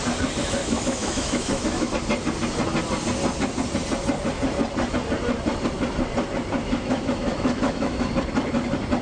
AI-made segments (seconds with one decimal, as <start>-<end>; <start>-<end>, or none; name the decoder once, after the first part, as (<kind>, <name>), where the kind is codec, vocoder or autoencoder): 0.6-1.9 (autoencoder, DAC-VAE); 6.6-8.1